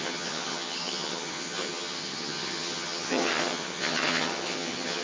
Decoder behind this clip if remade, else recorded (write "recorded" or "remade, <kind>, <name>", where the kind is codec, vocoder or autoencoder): remade, vocoder, HiFi-GAN